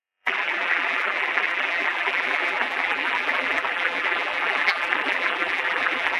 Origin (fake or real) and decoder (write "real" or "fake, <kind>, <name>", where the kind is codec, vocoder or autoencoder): fake, vocoder, BigVGAN v2